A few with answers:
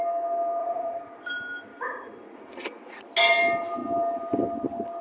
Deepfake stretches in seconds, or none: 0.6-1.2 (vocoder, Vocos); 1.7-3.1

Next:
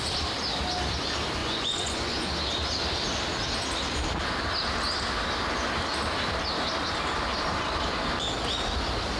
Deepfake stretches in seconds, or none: 1.4-2.3 (vocoder, Vocos)